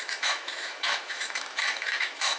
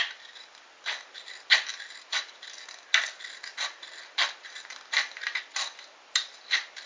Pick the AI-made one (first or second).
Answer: first